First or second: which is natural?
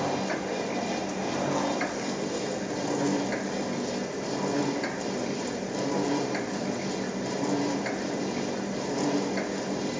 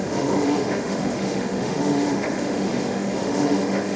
first